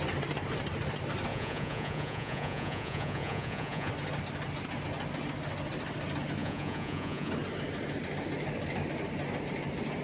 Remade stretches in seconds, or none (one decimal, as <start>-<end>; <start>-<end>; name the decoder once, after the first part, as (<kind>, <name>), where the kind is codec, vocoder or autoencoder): 1.3-3.9 (vocoder, Vocos); 6.4-7.3